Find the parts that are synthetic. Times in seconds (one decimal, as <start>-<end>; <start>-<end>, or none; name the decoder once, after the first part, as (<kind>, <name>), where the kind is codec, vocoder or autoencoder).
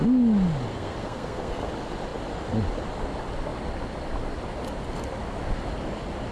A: 0.7-1.7 (codec, SNAC)